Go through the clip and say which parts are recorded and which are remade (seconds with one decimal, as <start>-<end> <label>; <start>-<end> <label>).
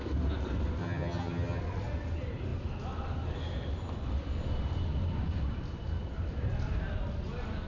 0.0-0.8 recorded; 0.8-1.6 remade; 1.6-7.7 recorded